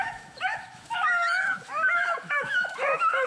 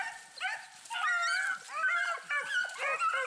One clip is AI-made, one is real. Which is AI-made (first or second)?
first